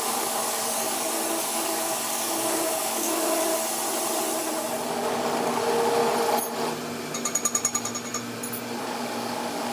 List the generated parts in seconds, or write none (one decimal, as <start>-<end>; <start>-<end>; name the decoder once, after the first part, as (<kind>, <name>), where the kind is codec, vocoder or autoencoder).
0.0-3.5 (codec, DAC); 4.9-6.0; 8.8-9.7